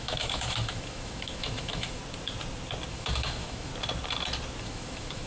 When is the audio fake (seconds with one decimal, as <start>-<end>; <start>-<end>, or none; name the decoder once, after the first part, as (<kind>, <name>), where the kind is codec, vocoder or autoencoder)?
0.0-2.0 (autoencoder, DAC-VAE); 2.9-3.7; 4.6-5.3